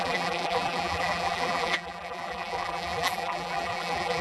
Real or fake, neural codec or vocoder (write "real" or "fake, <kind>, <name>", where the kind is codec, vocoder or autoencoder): fake, vocoder, BigVGAN v2